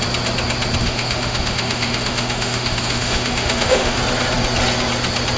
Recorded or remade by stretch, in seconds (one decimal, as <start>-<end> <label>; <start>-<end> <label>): 0.0-0.8 recorded; 0.8-4.0 remade; 4.0-5.4 recorded